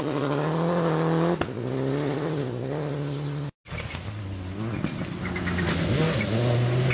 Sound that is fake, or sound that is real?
real